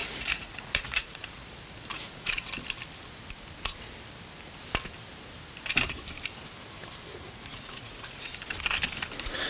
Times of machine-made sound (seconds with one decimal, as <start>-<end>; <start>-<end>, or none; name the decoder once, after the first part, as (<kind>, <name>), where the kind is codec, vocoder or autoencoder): 0.0-1.2 (vocoder, Vocos); 1.9-2.5; 7.1-8.3

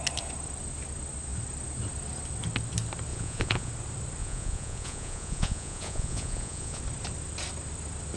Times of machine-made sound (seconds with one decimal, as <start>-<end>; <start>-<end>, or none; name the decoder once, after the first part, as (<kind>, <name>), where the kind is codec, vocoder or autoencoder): 3.1-3.7 (vocoder, Vocos); 4.2-6.8

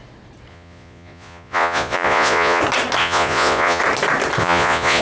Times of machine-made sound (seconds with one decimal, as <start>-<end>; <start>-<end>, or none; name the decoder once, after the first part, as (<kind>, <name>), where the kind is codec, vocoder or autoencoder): 0.5-2.6 (vocoder, Vocos); 3.0-3.8; 4.4-5.0

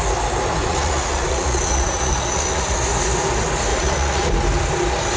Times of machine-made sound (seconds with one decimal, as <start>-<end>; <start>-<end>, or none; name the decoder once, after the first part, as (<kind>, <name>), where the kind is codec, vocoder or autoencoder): 0.6-2.8 (vocoder, Vocos); 3.7-4.3

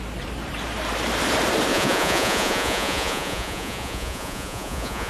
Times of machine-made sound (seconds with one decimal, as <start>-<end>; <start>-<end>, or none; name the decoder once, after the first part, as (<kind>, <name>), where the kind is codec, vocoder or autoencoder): 1.7-5.1 (vocoder, Vocos)

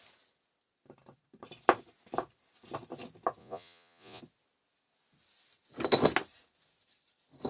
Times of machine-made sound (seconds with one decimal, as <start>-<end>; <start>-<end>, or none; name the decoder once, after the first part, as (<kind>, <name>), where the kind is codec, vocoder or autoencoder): 3.4-4.2 (vocoder, Vocos)